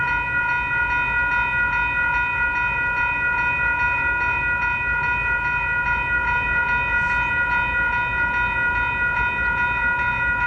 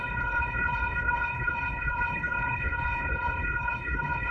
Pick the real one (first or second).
first